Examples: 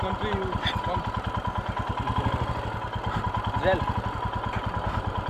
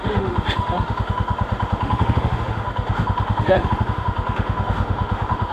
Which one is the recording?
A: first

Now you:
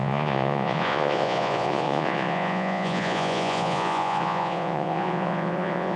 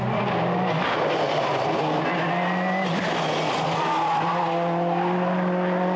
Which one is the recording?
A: second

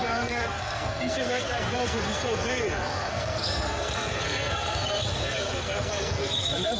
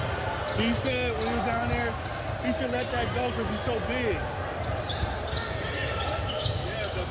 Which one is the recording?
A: second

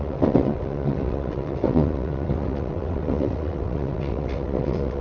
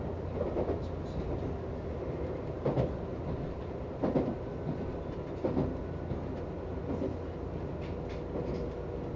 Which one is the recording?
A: second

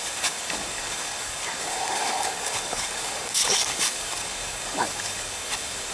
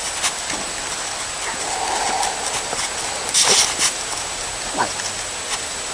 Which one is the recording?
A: second